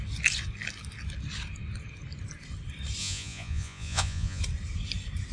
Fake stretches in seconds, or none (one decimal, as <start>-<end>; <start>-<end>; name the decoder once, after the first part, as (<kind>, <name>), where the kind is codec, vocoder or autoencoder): 3.0-4.4 (vocoder, Vocos)